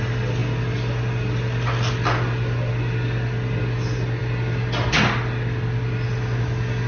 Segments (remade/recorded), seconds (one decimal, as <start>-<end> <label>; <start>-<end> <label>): 0.0-6.9 recorded